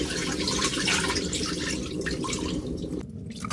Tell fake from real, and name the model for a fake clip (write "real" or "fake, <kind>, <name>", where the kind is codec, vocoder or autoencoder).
real